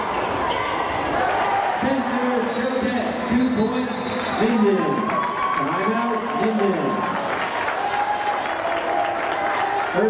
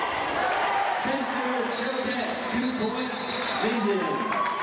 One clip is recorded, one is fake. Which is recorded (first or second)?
first